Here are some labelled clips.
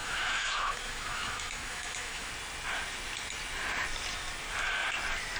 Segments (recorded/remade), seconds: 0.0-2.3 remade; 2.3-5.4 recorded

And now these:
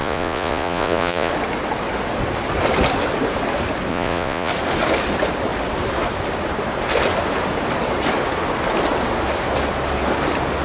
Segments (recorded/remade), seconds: 0.0-1.3 remade; 1.3-3.9 recorded; 3.9-4.5 remade; 4.5-10.6 recorded